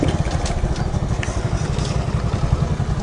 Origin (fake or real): real